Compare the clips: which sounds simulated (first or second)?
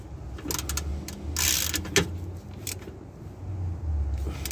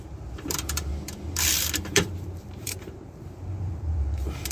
second